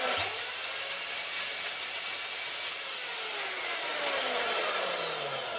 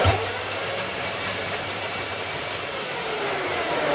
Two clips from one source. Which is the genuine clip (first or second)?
first